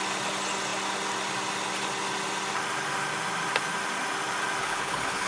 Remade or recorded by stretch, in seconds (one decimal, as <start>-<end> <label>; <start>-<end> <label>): 0.0-4.6 recorded; 4.6-5.3 remade